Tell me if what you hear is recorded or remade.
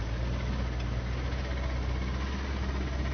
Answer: recorded